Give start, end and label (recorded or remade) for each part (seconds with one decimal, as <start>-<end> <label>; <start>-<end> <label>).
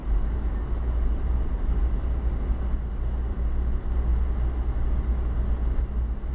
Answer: 0.0-6.3 recorded